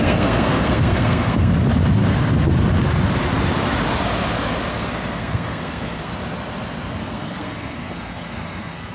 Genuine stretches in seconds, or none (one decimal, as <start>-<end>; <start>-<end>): 1.5-4.7; 6.1-7.0